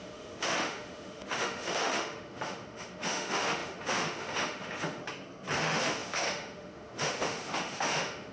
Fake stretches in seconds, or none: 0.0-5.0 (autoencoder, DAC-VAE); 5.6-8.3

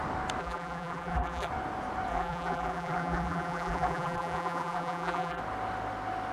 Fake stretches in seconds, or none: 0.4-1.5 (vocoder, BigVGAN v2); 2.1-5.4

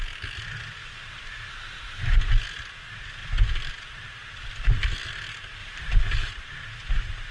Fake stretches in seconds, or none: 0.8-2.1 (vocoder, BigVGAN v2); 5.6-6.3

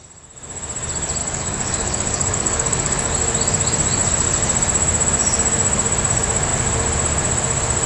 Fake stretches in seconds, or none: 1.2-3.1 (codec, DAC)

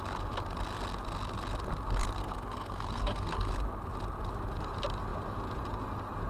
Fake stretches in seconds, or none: 2.2-3.5 (codec, SNAC)

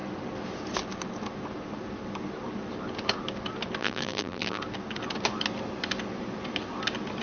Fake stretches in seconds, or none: 3.8-4.6 (vocoder, BigVGAN v2)

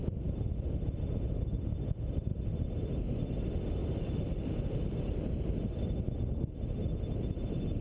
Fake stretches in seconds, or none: 2.3-3.0 (vocoder, BigVGAN v2); 3.8-5.8

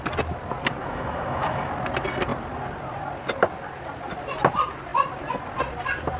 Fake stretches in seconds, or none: 0.8-1.7 (autoencoder, DAC-VAE)